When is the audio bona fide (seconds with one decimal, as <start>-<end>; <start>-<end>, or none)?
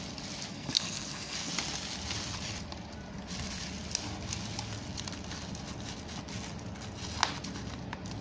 0.0-0.5; 1.5-8.2